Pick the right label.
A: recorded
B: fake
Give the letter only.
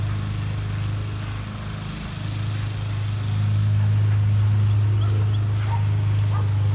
A